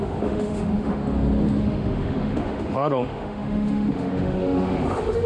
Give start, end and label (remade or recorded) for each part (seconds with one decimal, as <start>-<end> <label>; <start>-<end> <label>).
0.0-1.0 remade; 1.0-1.6 recorded; 1.6-5.3 remade